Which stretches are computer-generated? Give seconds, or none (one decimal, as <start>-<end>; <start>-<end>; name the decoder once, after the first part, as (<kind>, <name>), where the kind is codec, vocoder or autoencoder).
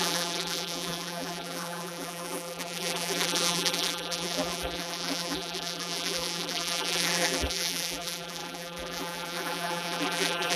0.0-10.6 (vocoder, BigVGAN v2)